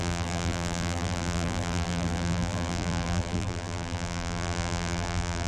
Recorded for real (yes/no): no